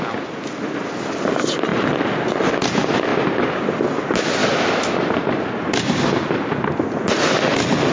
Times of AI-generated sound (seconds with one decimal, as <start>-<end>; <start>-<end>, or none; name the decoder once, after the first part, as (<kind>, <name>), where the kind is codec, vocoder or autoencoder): none